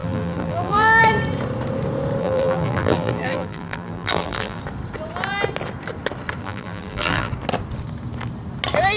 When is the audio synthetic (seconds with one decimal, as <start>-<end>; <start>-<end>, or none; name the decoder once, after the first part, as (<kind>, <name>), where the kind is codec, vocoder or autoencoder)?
0.0-1.0 (vocoder, BigVGAN v2); 2.2-4.6; 6.4-7.3